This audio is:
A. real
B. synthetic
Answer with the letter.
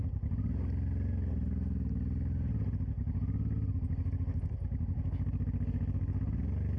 A